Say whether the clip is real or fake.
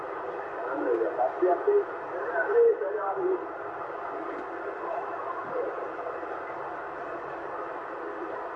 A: real